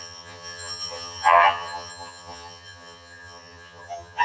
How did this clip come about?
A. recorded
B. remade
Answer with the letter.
B